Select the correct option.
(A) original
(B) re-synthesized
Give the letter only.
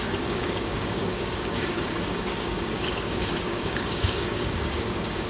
B